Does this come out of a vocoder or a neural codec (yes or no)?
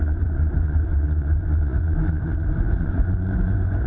yes